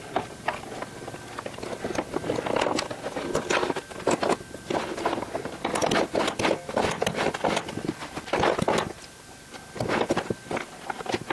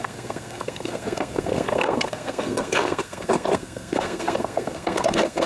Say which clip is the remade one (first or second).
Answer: second